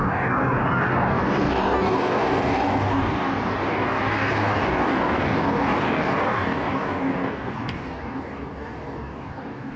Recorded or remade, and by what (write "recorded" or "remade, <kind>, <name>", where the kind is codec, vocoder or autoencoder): remade, codec, DAC